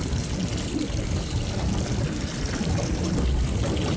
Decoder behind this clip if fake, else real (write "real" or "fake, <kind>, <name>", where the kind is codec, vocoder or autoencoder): real